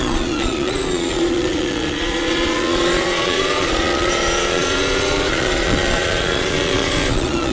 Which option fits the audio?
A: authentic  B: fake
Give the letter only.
B